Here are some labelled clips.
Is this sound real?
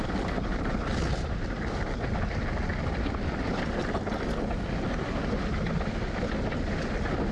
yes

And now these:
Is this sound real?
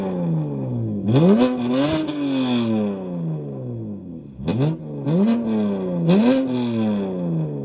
yes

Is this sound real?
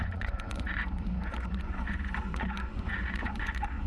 no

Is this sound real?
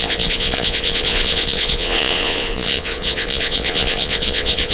no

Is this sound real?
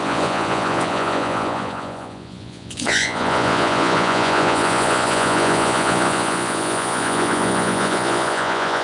no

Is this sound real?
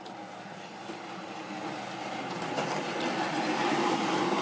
yes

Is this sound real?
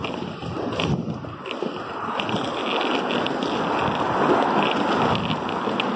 yes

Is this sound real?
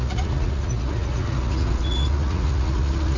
no